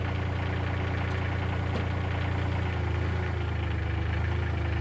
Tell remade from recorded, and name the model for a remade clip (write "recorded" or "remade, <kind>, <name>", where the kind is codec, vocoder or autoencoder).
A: recorded